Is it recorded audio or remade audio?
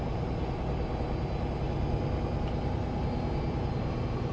recorded